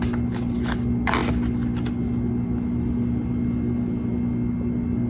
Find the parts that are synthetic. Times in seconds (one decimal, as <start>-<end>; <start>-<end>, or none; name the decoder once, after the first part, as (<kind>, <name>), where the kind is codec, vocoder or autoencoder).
none